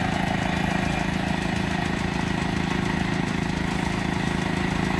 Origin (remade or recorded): recorded